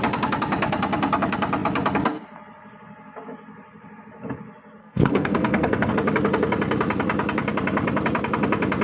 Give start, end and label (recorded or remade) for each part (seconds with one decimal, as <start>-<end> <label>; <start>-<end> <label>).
0.0-4.8 recorded; 4.8-5.9 remade; 5.9-8.8 recorded